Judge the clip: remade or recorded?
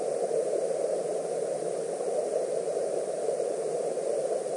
remade